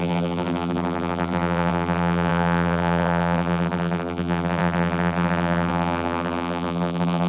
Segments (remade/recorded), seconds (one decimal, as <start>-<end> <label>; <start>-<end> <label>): 0.0-7.3 remade